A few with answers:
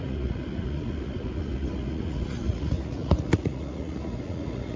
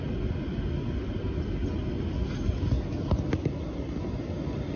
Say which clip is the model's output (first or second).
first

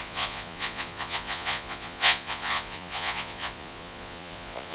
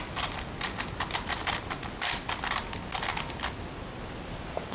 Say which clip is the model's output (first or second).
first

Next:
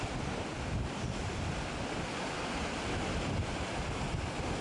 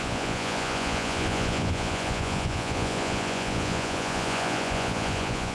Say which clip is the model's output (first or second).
second